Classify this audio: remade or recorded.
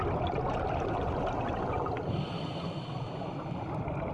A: recorded